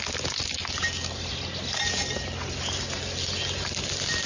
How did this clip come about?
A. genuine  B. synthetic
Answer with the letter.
A